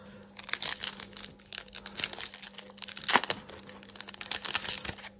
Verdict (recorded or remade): recorded